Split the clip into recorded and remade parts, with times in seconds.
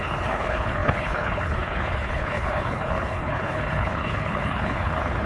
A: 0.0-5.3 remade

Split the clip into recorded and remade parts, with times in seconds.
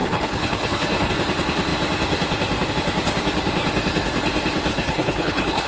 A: 0.0-1.1 remade; 1.1-4.7 recorded; 4.7-5.7 remade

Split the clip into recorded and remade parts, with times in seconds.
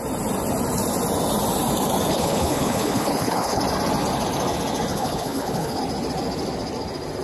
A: 0.0-2.1 recorded; 2.1-3.6 remade; 3.6-4.9 recorded; 4.9-5.8 remade; 5.8-7.2 recorded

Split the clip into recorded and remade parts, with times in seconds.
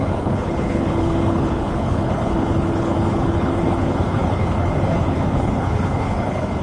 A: 0.0-6.6 remade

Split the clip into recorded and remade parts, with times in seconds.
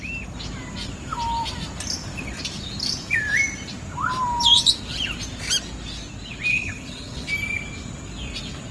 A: 0.0-6.5 recorded; 6.5-7.3 remade; 7.3-8.7 recorded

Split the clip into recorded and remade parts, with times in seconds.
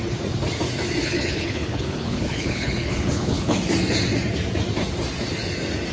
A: 0.0-1.0 recorded; 1.0-3.6 remade; 3.6-5.9 recorded